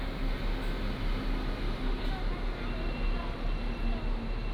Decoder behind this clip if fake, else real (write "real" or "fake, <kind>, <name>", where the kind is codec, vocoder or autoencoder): real